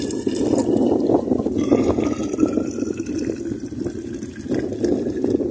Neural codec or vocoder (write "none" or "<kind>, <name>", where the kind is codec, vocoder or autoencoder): none